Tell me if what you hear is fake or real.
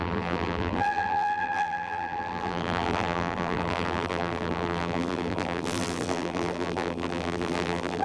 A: fake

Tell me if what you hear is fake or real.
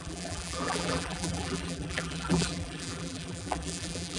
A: fake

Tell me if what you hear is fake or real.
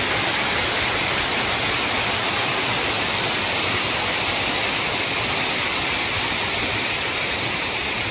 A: fake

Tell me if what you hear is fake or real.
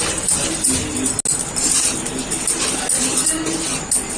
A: real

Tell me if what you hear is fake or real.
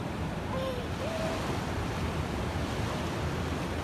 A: real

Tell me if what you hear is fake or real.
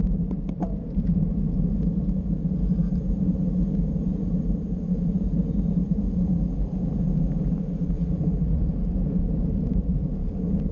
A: fake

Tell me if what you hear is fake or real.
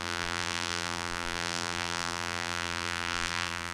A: fake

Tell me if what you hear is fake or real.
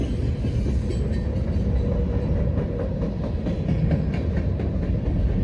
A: real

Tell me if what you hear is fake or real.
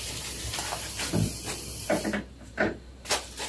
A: fake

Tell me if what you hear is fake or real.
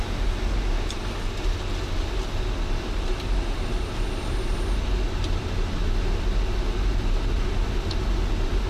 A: real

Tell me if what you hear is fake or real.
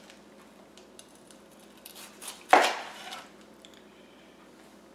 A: real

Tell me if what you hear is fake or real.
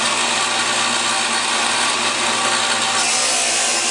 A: real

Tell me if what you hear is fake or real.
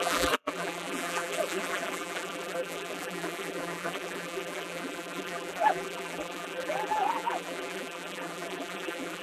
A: fake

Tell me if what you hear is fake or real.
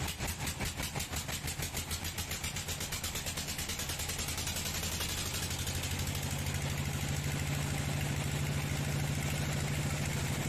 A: real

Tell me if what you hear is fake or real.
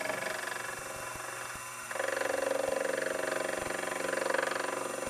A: real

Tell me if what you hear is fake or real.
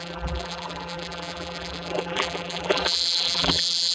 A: fake